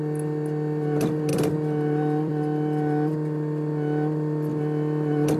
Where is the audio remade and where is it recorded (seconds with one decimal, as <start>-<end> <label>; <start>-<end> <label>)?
0.0-1.3 recorded; 1.3-2.3 remade; 2.3-5.4 recorded